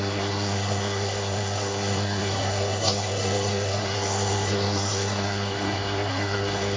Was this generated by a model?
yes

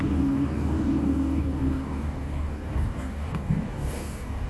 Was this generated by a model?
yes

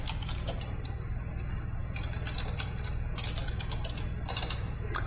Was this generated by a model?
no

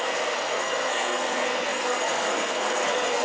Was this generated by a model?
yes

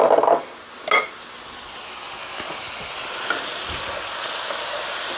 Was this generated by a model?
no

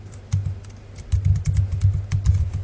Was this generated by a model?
no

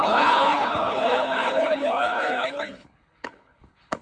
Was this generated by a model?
yes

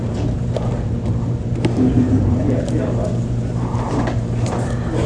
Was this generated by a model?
yes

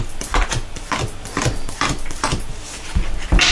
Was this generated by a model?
no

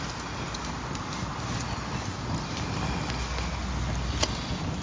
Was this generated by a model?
no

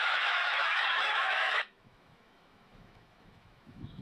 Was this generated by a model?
yes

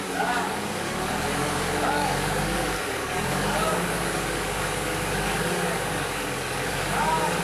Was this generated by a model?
yes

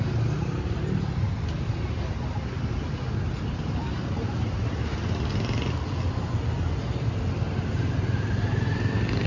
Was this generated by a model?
no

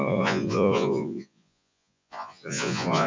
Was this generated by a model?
yes